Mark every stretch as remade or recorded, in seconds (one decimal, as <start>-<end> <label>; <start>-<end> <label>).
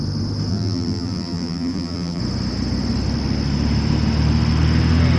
0.0-0.5 recorded; 0.5-2.2 remade; 2.2-5.2 recorded